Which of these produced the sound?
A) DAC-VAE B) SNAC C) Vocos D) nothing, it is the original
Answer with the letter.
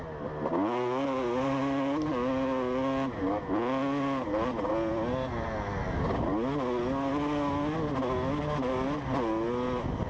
D